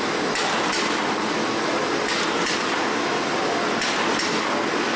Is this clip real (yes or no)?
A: yes